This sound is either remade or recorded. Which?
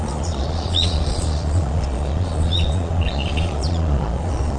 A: remade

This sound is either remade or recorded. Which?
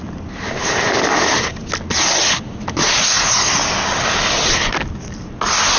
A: recorded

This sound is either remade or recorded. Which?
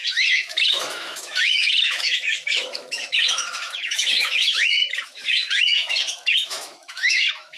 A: remade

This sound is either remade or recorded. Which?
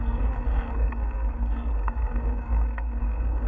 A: remade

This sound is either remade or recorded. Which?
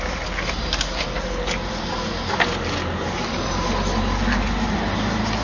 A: recorded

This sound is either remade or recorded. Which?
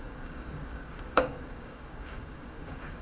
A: remade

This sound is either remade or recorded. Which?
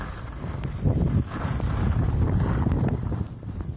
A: recorded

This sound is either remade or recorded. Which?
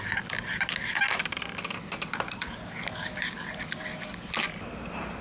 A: recorded